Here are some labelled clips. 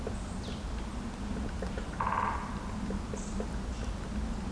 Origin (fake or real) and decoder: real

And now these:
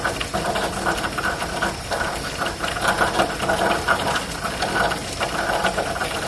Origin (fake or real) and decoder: real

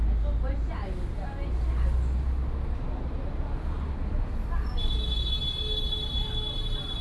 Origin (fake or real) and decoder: real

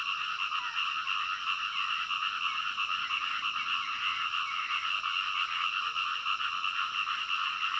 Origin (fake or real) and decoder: real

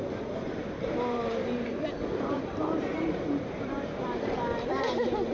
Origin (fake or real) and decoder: fake, vocoder, BigVGAN v2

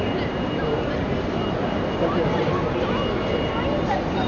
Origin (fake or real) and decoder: real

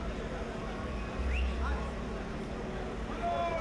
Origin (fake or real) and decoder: real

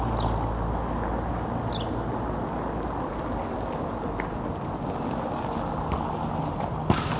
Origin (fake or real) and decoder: real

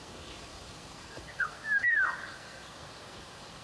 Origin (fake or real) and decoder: fake, codec, SNAC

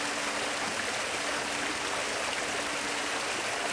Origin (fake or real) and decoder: real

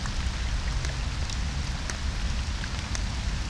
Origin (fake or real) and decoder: real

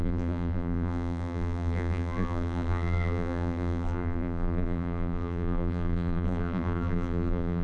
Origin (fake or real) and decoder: fake, vocoder, BigVGAN v2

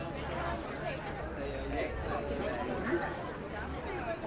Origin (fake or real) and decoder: real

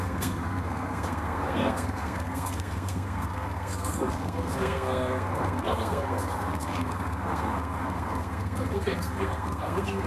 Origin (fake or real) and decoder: fake, codec, SNAC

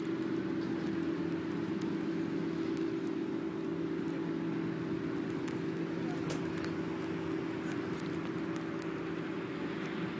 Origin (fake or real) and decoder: real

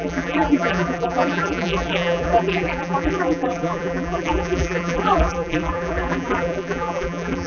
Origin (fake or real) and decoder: fake, vocoder, BigVGAN v2